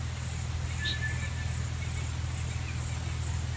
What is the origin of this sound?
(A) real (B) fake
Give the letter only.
A